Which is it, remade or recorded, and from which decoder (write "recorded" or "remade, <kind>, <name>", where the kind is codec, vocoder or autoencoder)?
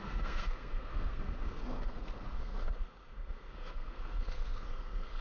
remade, codec, SNAC